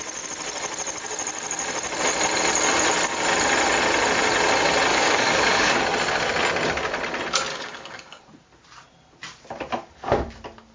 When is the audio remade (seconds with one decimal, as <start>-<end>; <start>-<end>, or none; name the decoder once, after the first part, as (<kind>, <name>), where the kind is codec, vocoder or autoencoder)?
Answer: 4.9-5.8 (codec, DAC); 7.5-8.2